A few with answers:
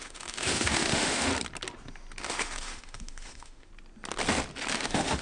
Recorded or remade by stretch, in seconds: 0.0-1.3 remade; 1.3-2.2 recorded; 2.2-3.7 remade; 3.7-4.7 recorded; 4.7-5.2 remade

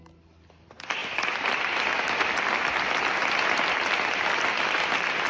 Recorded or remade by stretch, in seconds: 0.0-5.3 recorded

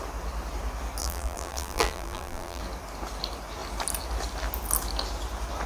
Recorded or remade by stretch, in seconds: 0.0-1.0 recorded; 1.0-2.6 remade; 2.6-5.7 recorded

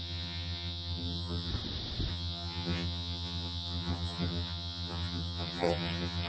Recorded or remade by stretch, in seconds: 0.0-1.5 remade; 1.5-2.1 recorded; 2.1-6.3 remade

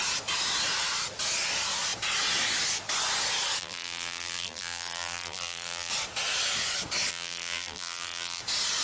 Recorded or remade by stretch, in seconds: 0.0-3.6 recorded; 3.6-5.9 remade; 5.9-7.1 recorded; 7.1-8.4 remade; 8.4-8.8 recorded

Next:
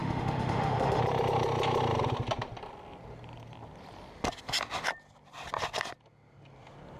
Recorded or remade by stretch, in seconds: 0.0-1.0 remade; 1.0-7.0 recorded